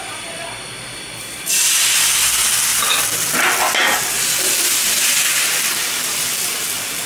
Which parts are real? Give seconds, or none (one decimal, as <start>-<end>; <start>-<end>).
0.0-7.1